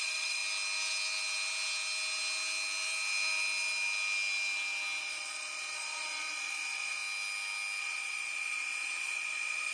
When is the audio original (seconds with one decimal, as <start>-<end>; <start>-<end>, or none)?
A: 0.4-5.0; 7.0-7.8